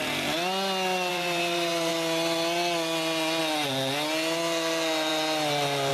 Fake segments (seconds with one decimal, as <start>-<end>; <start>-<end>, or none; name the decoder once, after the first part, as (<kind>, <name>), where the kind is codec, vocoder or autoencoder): 1.1-1.9 (vocoder, BigVGAN v2)

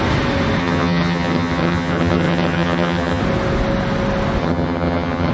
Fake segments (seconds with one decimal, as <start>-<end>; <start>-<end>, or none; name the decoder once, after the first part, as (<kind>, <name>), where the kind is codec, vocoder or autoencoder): 0.6-3.2 (vocoder, HiFi-GAN); 4.4-5.3

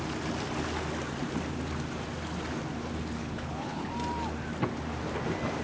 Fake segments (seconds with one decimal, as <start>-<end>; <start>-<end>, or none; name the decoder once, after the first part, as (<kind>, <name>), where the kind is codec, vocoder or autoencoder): 3.2-3.9 (codec, HILCodec)

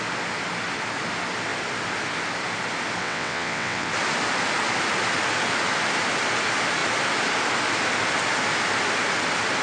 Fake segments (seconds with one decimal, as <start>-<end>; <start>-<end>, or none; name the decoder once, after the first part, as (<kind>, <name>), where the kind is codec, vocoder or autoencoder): 3.0-3.9 (vocoder, WaveNeXt)

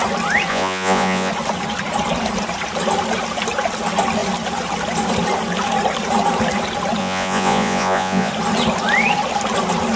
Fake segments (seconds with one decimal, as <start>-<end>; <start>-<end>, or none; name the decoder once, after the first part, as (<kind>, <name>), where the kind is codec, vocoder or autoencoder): 0.5-1.3 (vocoder, Vocos); 7.0-8.3

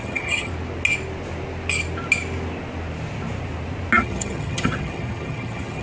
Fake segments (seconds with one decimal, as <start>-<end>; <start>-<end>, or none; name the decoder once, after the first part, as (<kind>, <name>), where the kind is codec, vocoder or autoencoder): 0.0-0.5 (vocoder, HiFi-GAN); 4.0-5.8

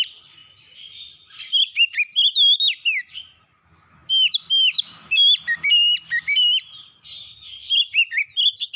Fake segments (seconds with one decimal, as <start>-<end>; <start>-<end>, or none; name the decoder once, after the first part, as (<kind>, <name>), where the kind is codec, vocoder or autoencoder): none

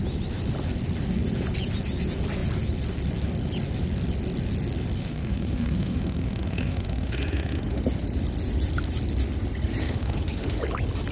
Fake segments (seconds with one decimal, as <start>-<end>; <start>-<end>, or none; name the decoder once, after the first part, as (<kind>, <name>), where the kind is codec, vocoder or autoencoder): 5.0-7.8 (autoencoder, DAC-VAE); 9.8-10.6